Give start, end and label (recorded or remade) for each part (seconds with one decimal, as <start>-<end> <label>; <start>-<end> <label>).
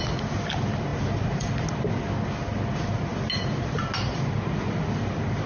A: 0.0-5.5 recorded